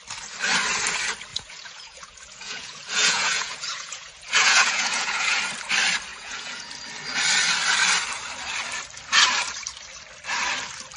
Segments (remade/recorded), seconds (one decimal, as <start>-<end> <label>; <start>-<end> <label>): 0.0-1.3 recorded; 1.3-5.4 remade; 5.4-6.1 recorded; 6.1-6.7 remade; 6.7-11.0 recorded